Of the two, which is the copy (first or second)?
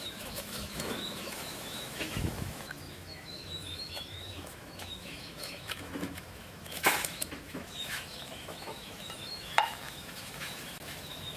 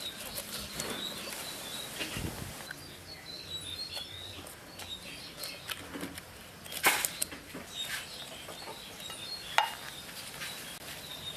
first